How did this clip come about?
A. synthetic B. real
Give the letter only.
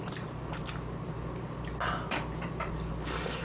B